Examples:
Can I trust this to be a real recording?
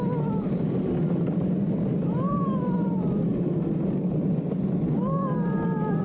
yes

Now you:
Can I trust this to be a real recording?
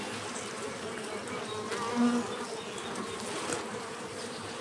yes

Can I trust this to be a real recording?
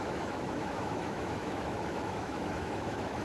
no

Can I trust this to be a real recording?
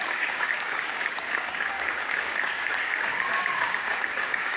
no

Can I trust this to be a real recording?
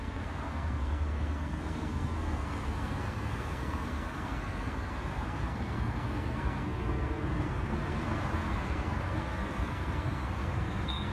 no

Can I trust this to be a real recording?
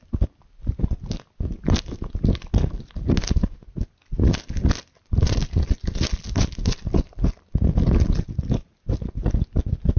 yes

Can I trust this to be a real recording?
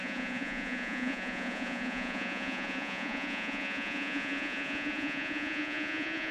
no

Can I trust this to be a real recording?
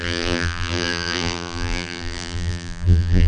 no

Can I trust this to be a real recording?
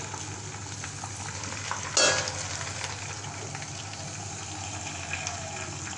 yes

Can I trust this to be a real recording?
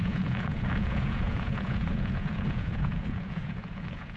no